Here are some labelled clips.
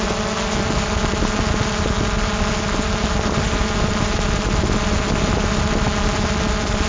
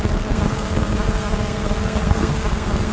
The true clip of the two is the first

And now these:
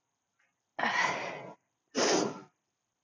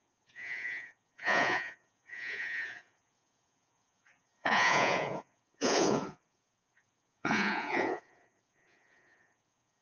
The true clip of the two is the first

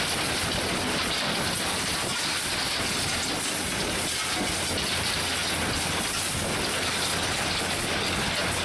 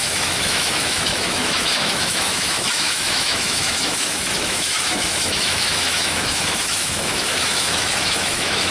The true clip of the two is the first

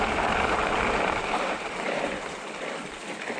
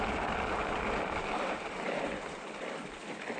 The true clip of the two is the second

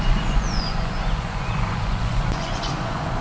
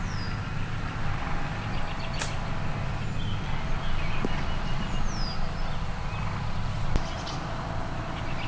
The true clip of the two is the second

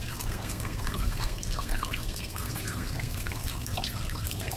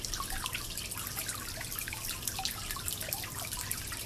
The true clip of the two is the second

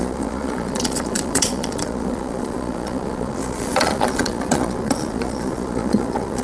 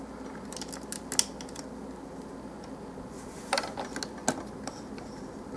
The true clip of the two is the second